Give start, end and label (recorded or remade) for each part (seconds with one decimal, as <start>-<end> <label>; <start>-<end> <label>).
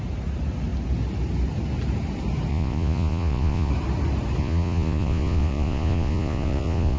0.0-2.5 recorded; 2.5-3.7 remade; 3.7-4.4 recorded; 4.4-7.0 remade